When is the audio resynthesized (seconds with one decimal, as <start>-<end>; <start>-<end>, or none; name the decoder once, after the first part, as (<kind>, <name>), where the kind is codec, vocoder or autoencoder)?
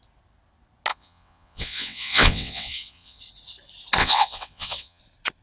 0.9-3.2 (vocoder, WaveNeXt); 4.0-5.0